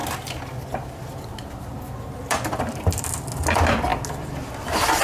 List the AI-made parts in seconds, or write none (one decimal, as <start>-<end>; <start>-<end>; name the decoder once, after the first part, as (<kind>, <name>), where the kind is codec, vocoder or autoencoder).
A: none